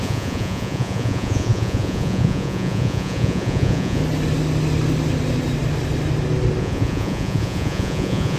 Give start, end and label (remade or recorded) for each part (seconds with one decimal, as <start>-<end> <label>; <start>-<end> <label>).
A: 0.0-4.0 remade; 4.0-6.6 recorded; 6.6-8.4 remade